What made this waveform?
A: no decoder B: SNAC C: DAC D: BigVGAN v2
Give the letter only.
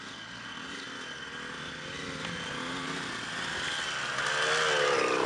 A